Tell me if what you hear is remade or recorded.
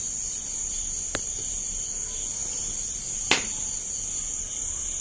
recorded